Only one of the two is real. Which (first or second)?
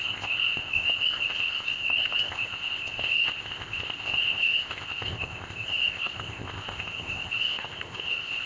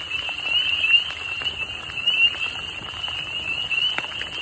second